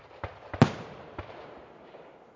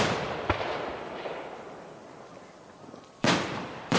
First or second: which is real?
first